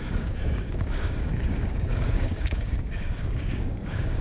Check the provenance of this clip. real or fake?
fake